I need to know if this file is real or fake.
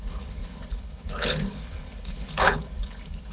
fake